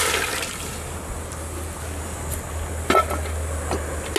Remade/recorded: recorded